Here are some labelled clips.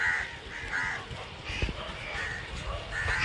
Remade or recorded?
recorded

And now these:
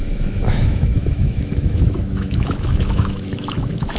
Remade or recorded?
remade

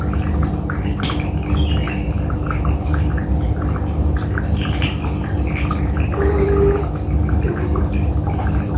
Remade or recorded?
recorded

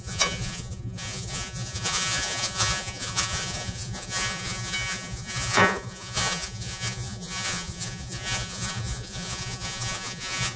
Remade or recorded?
remade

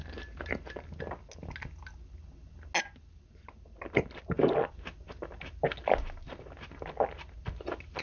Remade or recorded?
recorded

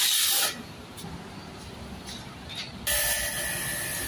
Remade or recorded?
recorded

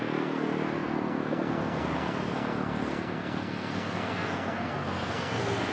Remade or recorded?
remade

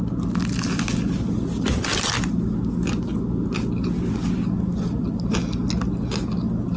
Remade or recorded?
recorded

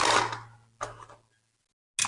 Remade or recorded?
recorded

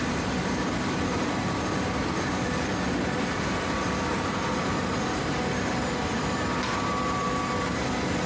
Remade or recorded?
remade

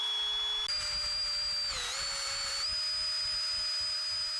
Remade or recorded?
recorded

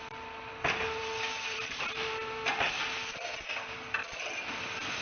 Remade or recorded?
remade